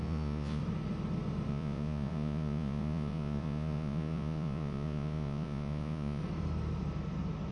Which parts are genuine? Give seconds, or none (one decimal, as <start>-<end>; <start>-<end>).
0.6-1.5; 6.2-7.5